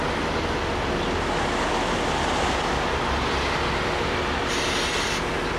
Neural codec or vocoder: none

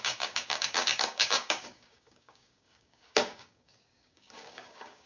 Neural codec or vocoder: codec, DAC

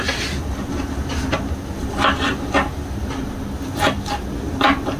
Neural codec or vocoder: none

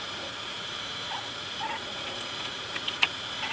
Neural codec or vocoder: vocoder, Vocos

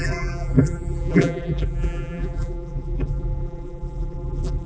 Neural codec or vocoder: vocoder, BigVGAN v2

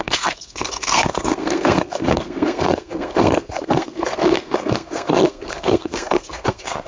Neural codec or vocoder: codec, SNAC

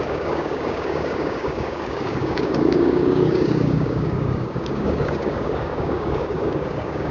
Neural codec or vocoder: codec, DAC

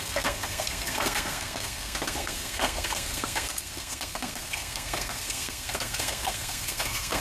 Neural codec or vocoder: codec, SNAC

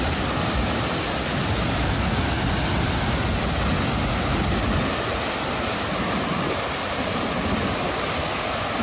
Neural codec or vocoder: none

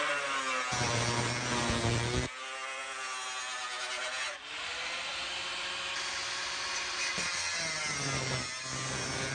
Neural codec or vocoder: none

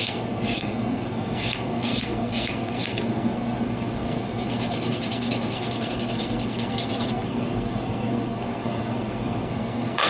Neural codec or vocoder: codec, SNAC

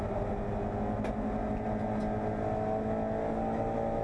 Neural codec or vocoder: none